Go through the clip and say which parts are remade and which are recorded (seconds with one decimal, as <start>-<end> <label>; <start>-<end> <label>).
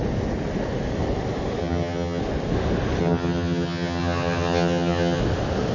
0.0-1.6 recorded; 1.6-2.2 remade; 2.2-3.0 recorded; 3.0-5.2 remade; 5.2-5.7 recorded